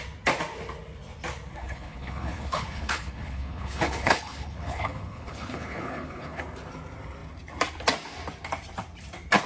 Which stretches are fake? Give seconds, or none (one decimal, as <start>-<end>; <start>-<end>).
1.6-6.4